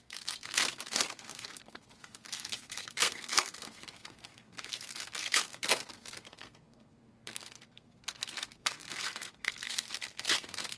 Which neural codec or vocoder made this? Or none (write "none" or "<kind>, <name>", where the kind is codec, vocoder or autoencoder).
codec, SNAC